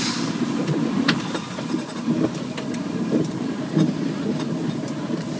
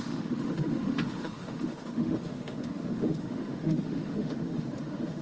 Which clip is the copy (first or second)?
second